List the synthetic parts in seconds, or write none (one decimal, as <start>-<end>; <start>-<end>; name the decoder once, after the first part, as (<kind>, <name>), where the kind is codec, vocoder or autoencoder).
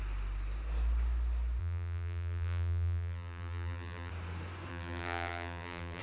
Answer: 1.6-4.1 (vocoder, BigVGAN v2); 4.7-6.0